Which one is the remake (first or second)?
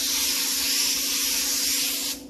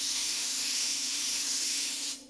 second